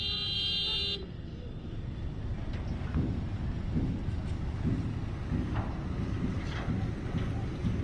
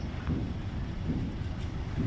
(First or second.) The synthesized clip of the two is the second